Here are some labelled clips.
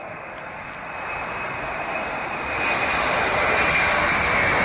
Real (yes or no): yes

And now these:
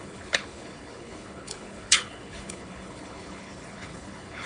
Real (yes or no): no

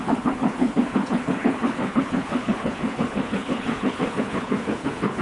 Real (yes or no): no